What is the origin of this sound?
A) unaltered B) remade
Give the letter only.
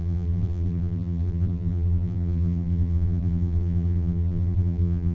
B